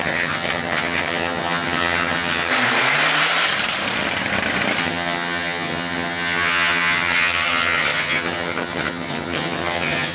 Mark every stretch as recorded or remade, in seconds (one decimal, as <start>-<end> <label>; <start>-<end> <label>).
0.0-2.5 remade; 2.5-4.8 recorded; 4.8-10.1 remade